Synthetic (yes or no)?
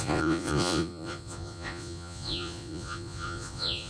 yes